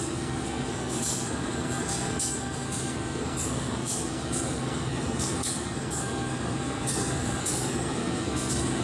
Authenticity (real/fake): fake